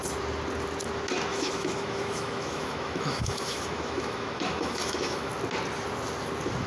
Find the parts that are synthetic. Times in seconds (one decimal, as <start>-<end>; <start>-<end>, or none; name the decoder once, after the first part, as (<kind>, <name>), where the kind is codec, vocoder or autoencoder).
1.3-5.3 (autoencoder, DAC-VAE)